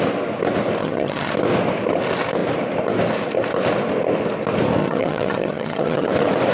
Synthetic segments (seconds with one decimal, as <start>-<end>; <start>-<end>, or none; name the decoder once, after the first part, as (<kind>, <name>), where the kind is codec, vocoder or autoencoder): 0.8-1.3 (vocoder, HiFi-GAN); 4.8-6.1